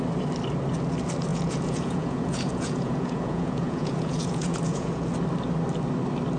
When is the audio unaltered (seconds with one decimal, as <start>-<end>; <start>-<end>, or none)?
0.0-1.3; 5.1-6.4